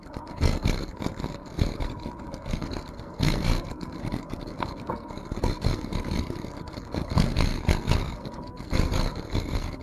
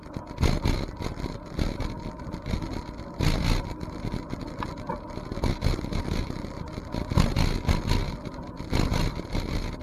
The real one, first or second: second